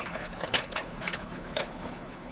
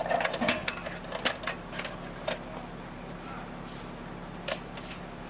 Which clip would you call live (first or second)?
second